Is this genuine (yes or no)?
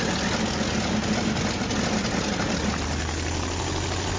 yes